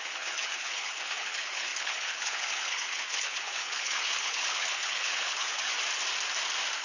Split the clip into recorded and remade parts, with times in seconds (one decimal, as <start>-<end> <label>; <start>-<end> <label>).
0.0-5.7 remade; 5.7-6.8 recorded

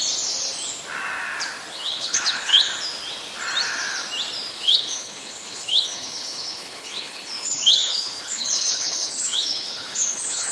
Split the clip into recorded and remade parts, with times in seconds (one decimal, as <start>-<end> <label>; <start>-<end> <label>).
0.0-1.7 recorded; 1.7-2.7 remade; 2.7-4.5 recorded; 4.5-10.5 remade

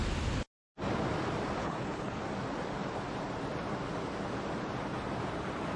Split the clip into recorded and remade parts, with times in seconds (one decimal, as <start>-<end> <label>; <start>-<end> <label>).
0.0-1.6 recorded; 1.6-2.2 remade; 2.2-5.8 recorded

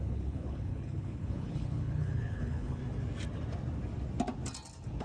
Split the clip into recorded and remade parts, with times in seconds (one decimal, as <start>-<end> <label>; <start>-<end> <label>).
0.0-2.8 remade; 2.8-5.0 recorded